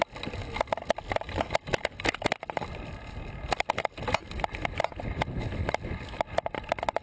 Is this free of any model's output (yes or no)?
yes